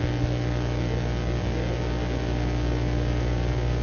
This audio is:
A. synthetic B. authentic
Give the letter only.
B